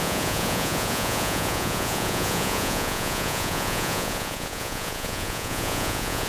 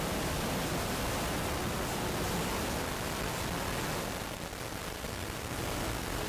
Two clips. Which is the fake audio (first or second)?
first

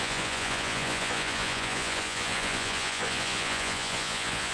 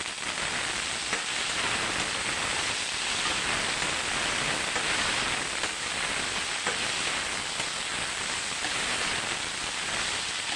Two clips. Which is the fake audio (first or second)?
first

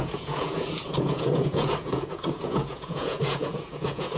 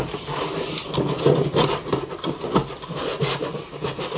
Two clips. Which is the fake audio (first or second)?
first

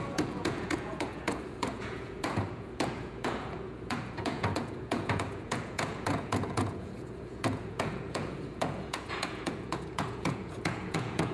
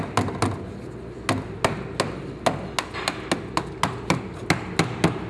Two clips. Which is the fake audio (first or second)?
first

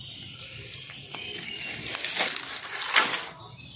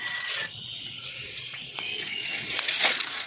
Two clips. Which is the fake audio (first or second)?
second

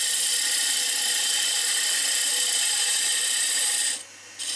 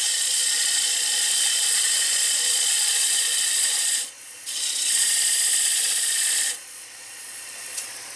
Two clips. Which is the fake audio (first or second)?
second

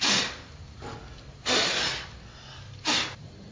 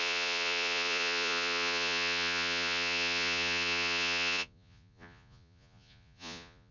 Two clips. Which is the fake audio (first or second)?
second